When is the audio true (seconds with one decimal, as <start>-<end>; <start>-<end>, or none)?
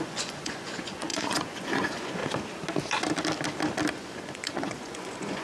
2.2-3.9